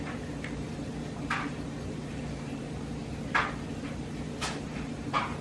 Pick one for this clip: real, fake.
fake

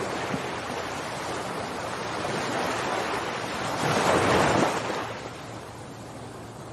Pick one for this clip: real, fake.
real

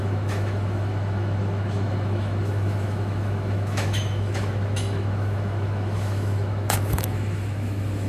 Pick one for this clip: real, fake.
fake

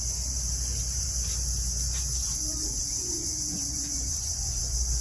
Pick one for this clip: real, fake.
fake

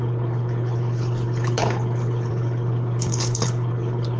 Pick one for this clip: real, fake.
fake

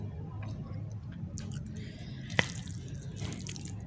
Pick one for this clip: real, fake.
real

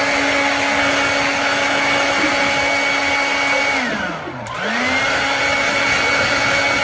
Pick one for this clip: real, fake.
real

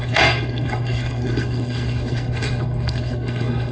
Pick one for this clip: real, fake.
fake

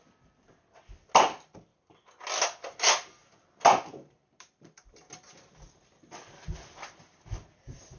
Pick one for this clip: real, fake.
real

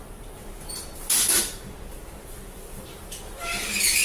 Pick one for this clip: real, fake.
real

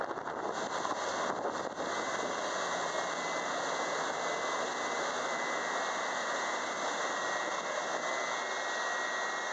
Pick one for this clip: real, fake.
real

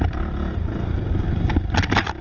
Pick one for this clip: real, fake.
real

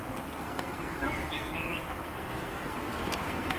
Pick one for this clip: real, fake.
fake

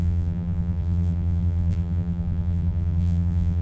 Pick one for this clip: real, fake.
fake